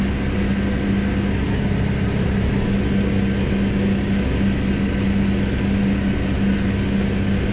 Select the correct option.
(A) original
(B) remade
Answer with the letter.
A